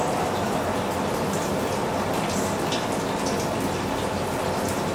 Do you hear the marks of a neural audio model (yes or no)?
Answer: no